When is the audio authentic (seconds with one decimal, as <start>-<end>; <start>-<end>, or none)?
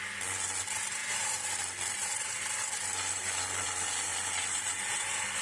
0.0-5.4